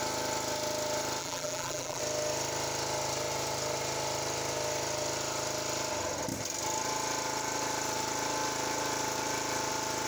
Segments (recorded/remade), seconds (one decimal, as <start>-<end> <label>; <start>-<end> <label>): 0.0-1.2 recorded; 1.2-2.0 remade; 2.0-10.1 recorded